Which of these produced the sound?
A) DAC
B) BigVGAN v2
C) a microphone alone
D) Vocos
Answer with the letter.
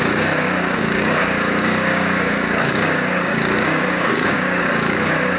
A